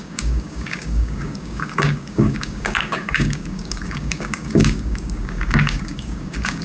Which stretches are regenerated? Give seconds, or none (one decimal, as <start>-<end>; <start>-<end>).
0.0-6.6